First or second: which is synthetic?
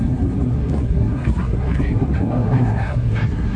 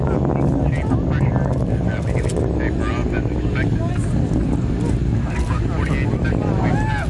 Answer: first